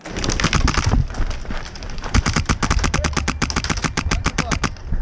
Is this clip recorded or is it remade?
recorded